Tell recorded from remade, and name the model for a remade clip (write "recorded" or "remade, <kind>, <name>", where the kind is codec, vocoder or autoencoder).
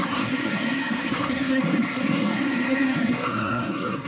remade, codec, SNAC